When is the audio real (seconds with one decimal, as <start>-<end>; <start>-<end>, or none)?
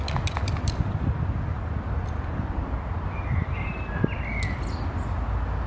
0.0-5.7